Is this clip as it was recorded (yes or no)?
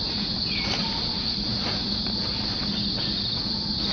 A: yes